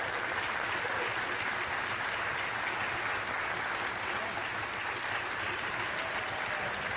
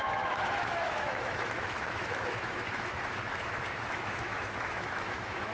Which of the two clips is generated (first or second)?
second